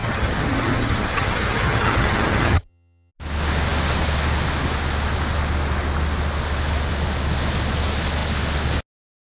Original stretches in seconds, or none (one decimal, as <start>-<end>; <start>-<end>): 3.1-9.3